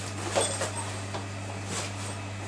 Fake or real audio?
real